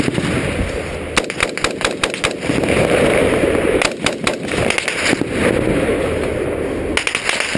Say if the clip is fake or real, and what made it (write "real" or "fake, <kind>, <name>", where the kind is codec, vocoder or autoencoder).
real